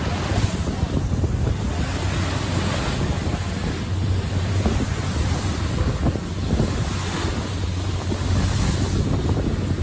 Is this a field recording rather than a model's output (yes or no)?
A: yes